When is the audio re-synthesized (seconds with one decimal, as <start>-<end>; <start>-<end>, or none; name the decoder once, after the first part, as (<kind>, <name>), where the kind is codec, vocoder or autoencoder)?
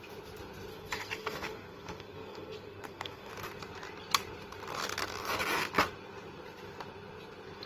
0.7-3.3 (codec, SNAC)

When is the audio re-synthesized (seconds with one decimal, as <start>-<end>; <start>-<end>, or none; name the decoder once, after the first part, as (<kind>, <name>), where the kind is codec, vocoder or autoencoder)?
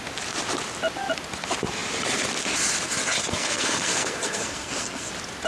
3.2-5.1 (codec, SNAC)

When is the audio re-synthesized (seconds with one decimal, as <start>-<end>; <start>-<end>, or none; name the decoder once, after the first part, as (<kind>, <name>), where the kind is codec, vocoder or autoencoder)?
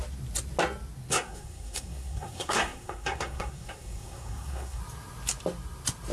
1.1-4.8 (codec, SNAC)